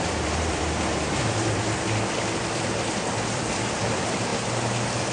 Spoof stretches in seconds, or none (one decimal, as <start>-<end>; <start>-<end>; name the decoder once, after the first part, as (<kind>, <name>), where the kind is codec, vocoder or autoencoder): 0.0-4.3 (vocoder, BigVGAN v2)